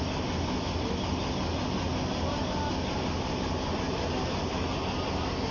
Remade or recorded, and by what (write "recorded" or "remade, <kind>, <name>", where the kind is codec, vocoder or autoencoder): recorded